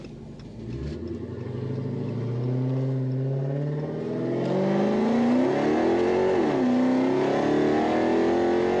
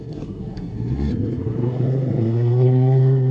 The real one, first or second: first